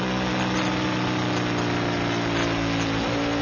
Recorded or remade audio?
recorded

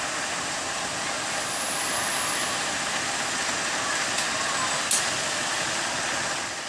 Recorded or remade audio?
recorded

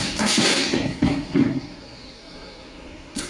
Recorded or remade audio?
remade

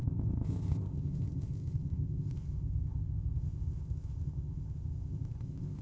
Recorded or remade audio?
remade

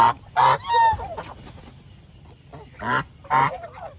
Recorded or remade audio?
recorded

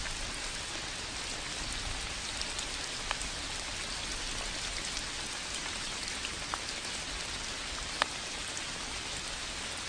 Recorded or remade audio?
recorded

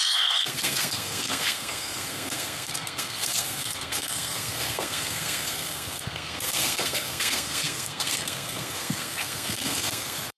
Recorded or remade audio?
remade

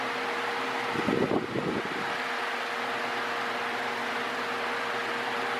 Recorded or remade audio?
recorded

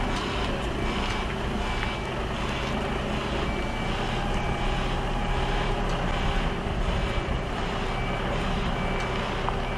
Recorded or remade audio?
recorded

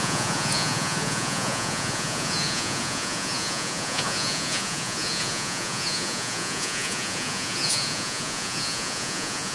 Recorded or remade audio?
remade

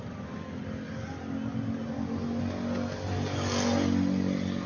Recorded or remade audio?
recorded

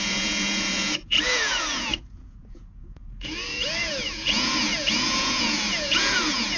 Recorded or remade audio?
remade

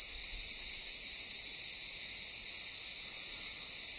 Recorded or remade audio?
recorded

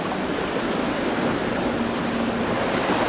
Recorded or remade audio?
recorded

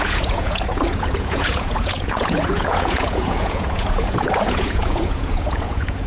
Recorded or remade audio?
remade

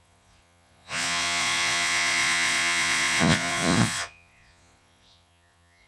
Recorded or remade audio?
remade